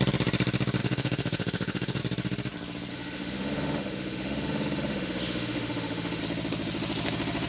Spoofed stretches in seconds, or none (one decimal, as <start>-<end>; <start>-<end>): 0.8-2.0; 2.9-6.2